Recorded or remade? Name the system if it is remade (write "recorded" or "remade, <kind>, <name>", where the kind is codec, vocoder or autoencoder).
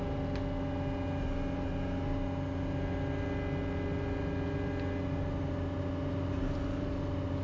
recorded